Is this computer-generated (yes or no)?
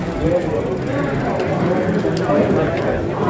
no